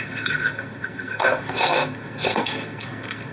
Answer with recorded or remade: remade